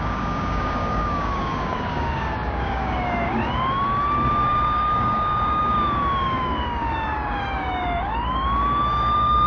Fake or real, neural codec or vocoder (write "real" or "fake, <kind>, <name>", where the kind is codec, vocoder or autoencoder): fake, codec, DAC